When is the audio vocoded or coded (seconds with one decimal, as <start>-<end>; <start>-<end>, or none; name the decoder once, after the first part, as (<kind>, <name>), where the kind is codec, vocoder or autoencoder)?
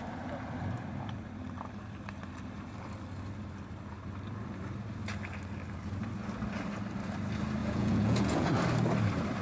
7.6-8.5 (vocoder, Vocos)